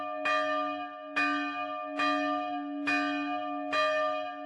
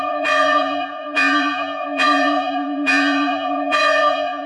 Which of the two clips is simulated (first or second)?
second